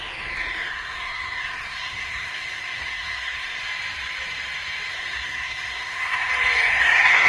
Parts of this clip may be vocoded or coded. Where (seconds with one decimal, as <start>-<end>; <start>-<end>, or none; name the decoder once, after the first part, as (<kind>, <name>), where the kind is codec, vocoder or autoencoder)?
0.6-3.6 (codec, SNAC); 4.9-6.3; 6.8-7.3